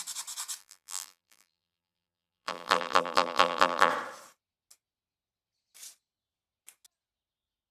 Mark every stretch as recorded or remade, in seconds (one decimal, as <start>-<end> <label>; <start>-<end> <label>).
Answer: 0.0-0.6 recorded; 0.6-3.9 remade; 3.9-7.7 recorded